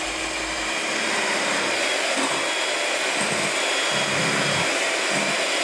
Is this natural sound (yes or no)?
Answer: yes